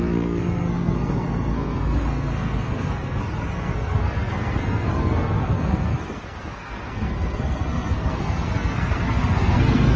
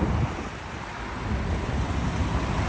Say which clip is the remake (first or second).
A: first